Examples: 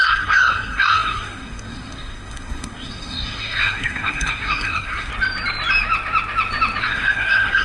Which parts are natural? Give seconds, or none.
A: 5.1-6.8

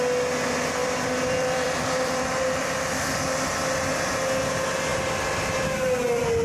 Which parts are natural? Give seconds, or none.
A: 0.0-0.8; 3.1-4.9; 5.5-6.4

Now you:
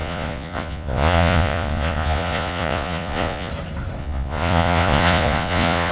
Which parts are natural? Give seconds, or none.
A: 3.5-4.0

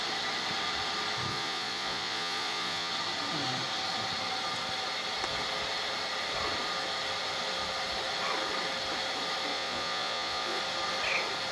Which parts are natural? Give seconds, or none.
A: 0.0-1.3; 2.9-9.5; 10.6-11.5

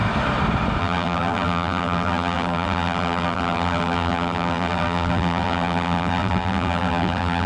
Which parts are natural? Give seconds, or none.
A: 0.0-0.8

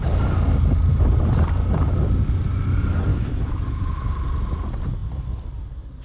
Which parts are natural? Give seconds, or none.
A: 0.0-3.1; 4.1-6.0